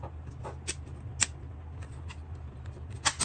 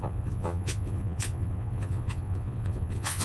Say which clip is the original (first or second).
first